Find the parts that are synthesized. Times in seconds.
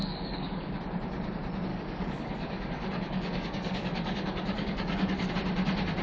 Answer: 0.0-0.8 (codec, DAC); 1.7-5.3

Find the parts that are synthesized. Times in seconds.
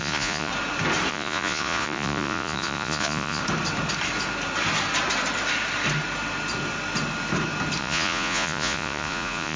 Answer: 0.0-0.5 (vocoder, Vocos); 1.1-3.4; 7.8-9.6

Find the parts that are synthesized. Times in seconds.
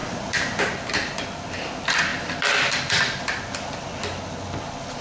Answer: 0.6-5.0 (vocoder, BigVGAN v2)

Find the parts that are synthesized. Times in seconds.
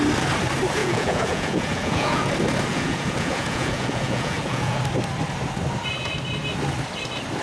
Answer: 0.8-2.3 (vocoder, Vocos); 2.7-4.8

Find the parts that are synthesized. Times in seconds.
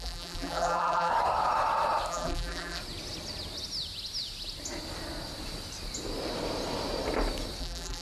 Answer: 0.0-1.1 (vocoder, BigVGAN v2); 2.1-2.8; 7.6-8.0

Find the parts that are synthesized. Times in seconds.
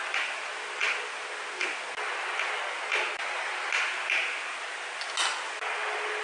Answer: none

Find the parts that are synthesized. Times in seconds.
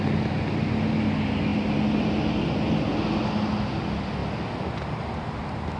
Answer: none